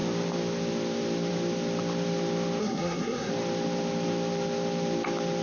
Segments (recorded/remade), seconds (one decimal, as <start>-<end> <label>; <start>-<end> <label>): 0.0-2.6 recorded; 2.6-3.3 remade; 3.3-5.4 recorded